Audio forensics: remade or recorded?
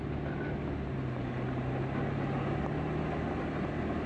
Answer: recorded